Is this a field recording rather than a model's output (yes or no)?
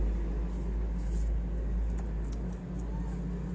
yes